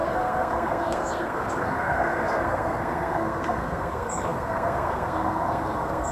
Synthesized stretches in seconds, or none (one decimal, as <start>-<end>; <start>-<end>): 0.0-6.1